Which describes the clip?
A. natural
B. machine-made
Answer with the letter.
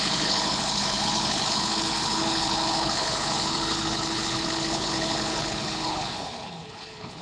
B